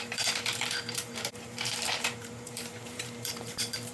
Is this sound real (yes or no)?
no